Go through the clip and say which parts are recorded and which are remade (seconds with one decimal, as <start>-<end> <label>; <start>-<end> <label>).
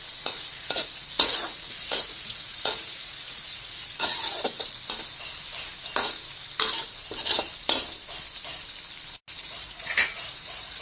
0.0-4.3 remade; 4.3-9.4 recorded; 9.4-10.8 remade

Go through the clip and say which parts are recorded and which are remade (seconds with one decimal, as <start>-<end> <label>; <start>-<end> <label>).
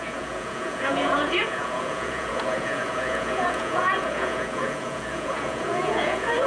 0.0-6.5 remade